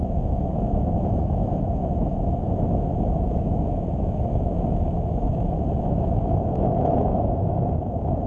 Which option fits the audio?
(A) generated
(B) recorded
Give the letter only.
A